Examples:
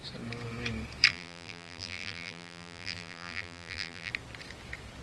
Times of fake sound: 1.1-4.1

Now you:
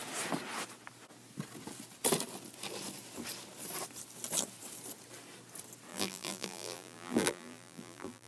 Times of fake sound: 5.9-8.3

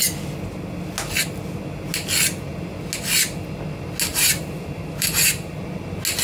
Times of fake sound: 4.1-5.5

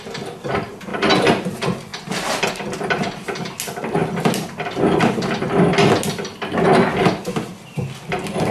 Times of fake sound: none

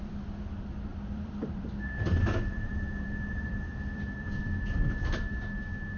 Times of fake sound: 0.9-4.4

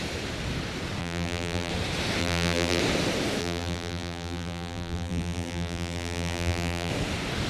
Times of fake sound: 1.0-1.7; 2.2-2.8; 3.4-6.9

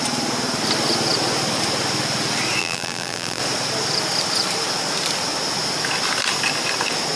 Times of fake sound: 2.6-3.4